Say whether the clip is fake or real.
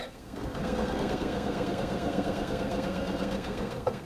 fake